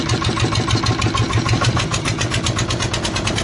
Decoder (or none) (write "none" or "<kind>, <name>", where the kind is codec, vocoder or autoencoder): none